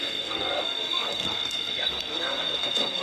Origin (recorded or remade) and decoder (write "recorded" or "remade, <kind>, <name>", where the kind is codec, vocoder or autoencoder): remade, codec, SNAC